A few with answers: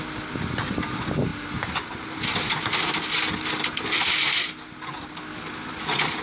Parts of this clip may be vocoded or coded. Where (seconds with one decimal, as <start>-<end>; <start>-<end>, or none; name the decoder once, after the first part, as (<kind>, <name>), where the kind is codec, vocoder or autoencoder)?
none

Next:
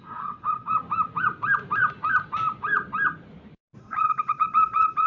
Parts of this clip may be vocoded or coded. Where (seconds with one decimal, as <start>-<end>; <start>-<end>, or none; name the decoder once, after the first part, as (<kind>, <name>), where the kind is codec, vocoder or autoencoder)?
0.0-0.7 (vocoder, WaveNeXt); 3.8-5.1

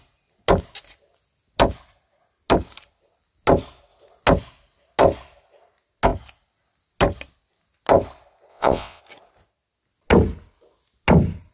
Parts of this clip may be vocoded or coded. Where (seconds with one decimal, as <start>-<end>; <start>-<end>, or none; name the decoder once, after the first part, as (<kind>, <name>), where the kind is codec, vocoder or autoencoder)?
8.5-9.0 (vocoder, WaveNeXt)

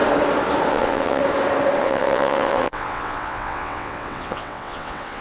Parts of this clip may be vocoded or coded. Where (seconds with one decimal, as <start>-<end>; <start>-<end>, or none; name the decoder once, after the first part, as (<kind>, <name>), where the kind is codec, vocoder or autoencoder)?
0.7-1.2 (vocoder, WaveNeXt); 1.8-5.2

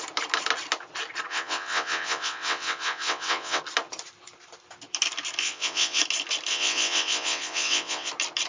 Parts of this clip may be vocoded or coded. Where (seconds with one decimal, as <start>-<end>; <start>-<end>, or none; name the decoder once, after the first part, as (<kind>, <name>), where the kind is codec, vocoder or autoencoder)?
1.3-3.6 (vocoder, WaveNeXt); 5.4-6.0; 6.5-8.1